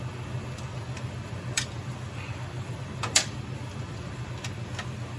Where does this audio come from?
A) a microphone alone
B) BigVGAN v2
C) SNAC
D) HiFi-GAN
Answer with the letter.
B